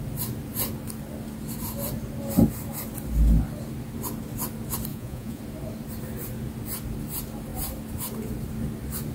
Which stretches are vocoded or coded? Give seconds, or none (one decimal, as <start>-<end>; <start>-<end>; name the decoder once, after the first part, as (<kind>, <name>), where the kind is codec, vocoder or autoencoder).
4.9-5.4 (vocoder, Vocos)